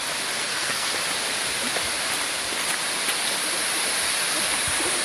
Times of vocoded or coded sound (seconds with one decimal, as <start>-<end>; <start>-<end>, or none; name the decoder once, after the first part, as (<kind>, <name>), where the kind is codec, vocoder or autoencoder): 0.4-0.9 (codec, SNAC)